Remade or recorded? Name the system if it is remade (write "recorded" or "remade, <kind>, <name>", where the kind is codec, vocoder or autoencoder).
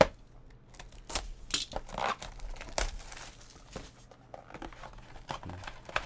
recorded